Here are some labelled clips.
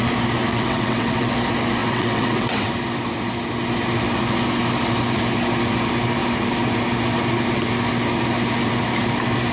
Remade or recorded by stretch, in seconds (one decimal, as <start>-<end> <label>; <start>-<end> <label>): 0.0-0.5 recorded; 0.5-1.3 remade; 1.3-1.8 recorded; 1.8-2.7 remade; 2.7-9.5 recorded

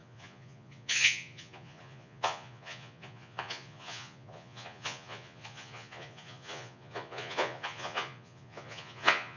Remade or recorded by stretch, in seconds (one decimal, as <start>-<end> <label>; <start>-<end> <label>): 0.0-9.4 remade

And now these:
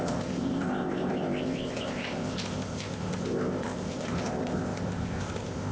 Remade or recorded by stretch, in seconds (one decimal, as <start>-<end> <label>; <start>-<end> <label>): 0.0-5.7 remade